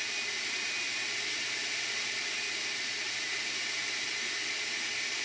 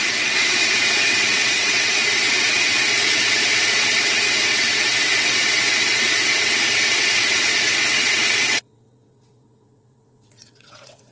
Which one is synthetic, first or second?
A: second